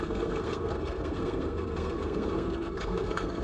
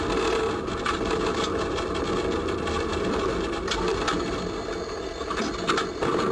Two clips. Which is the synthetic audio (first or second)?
first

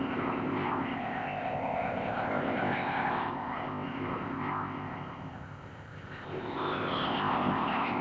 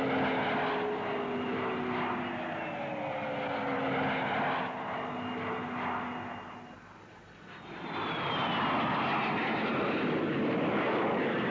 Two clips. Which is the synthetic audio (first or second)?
first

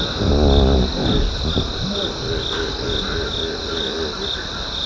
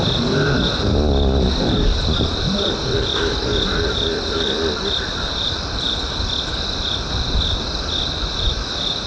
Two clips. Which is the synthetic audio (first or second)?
second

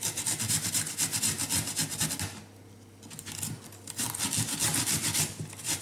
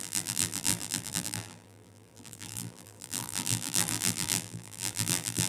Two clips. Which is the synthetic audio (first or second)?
second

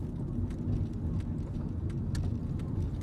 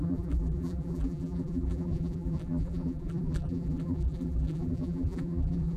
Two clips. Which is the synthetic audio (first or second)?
second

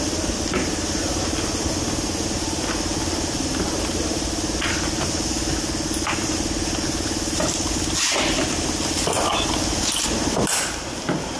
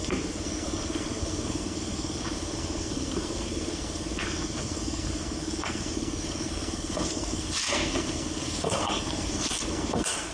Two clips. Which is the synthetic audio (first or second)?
second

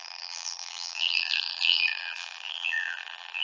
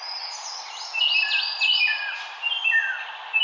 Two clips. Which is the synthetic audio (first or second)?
first